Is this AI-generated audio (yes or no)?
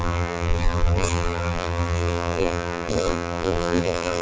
yes